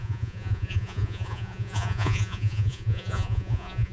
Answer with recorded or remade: remade